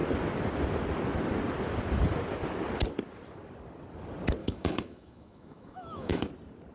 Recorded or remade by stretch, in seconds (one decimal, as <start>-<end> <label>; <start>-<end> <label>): 0.0-4.4 recorded; 4.4-6.3 remade; 6.3-6.7 recorded